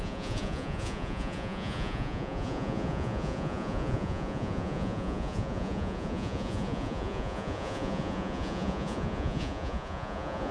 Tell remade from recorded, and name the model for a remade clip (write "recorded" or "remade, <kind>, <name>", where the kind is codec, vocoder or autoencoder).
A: remade, vocoder, Vocos